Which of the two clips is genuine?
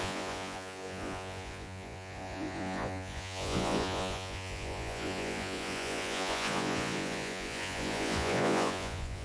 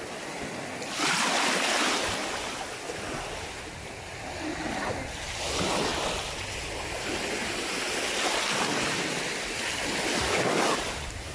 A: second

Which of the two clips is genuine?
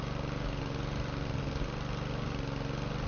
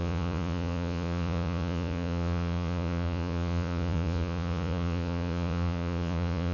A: first